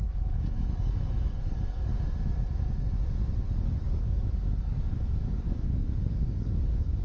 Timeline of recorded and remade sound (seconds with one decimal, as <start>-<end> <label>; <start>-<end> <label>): 0.0-1.9 remade; 1.9-3.6 recorded; 3.6-7.0 remade